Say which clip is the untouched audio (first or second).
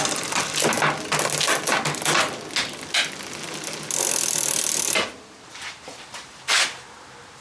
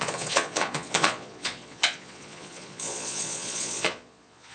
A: first